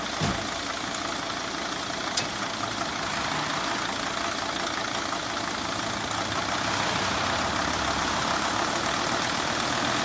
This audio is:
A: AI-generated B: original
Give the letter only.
B